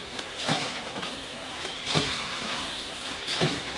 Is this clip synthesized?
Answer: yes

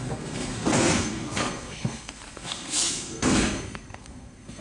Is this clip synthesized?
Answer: yes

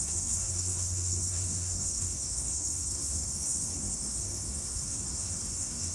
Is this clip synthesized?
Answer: yes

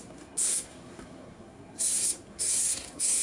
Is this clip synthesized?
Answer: yes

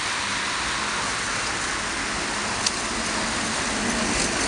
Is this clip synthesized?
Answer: no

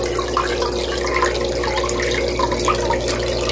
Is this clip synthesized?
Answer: no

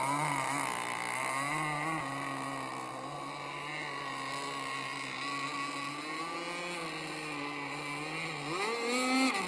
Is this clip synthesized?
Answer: no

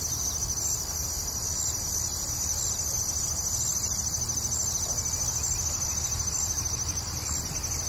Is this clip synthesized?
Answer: no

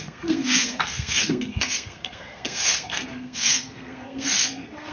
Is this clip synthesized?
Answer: yes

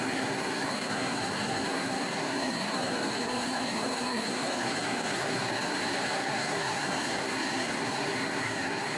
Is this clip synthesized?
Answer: yes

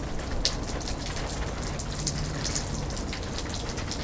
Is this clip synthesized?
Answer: no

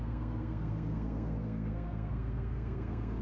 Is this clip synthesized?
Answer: yes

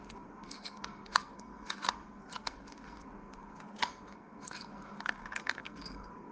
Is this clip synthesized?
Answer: yes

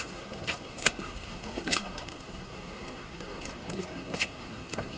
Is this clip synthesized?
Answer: yes